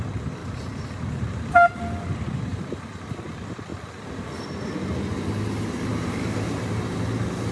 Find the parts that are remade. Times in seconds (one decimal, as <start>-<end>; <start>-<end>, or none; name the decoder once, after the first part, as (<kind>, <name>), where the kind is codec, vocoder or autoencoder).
0.4-1.8 (vocoder, BigVGAN v2); 3.7-5.0; 5.9-7.0